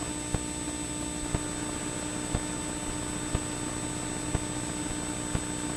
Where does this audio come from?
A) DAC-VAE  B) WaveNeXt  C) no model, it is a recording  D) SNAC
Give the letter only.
C